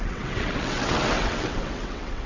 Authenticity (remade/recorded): remade